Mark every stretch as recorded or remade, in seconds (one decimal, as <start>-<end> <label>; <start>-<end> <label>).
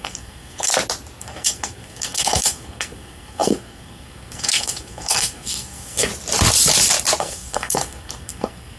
0.0-0.7 remade; 0.7-1.2 recorded; 1.2-6.1 remade; 6.1-7.2 recorded; 7.2-8.8 remade